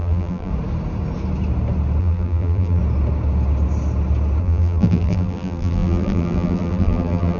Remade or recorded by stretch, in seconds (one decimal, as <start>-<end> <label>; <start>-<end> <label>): 0.0-0.5 remade; 0.5-2.0 recorded; 2.0-2.8 remade; 2.8-4.4 recorded; 4.4-7.4 remade